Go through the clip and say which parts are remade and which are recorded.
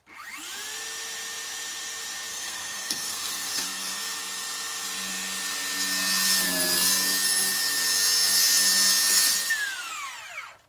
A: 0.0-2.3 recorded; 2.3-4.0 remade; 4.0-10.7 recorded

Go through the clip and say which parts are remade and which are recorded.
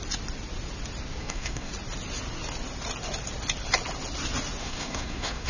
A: 0.0-1.2 recorded; 1.2-1.7 remade; 1.7-4.6 recorded; 4.6-5.5 remade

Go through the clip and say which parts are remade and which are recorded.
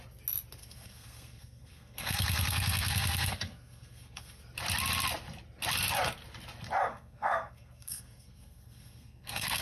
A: 0.0-0.6 recorded; 0.6-4.4 remade; 4.4-6.9 recorded; 6.9-9.6 remade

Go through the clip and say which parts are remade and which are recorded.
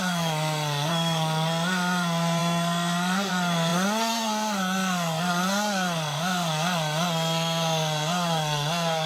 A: 0.0-9.1 remade